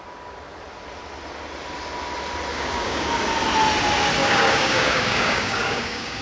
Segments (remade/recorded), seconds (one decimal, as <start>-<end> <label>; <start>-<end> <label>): 0.0-2.5 recorded; 2.5-3.1 remade; 3.1-4.2 recorded; 4.2-6.2 remade